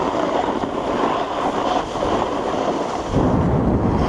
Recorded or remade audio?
recorded